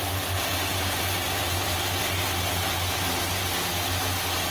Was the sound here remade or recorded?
recorded